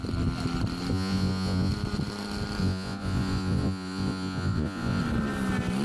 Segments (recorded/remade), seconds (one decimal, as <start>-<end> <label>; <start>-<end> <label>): 0.0-0.9 recorded; 0.9-1.7 remade; 1.7-2.6 recorded; 2.6-5.0 remade; 5.0-5.8 recorded